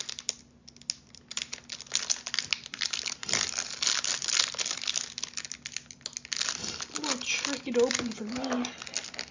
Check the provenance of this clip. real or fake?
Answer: real